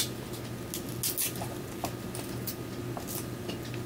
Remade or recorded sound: recorded